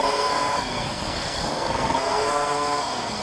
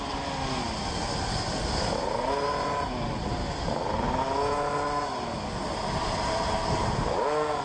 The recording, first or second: second